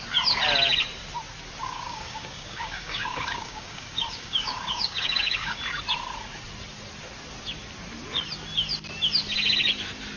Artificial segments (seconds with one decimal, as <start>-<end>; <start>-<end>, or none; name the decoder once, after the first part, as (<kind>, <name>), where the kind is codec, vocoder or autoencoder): 1.6-5.6 (codec, DAC)